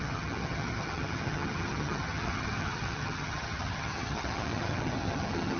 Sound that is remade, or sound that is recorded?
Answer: remade